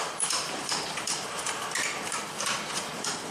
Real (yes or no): no